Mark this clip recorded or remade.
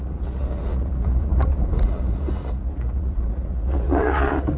remade